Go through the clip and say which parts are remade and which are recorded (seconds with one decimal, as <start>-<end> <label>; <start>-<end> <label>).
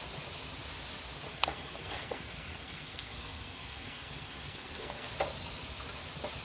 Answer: 0.0-1.3 recorded; 1.3-5.1 remade; 5.1-6.4 recorded